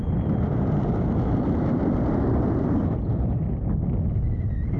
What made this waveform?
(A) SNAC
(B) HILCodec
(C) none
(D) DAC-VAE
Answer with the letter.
C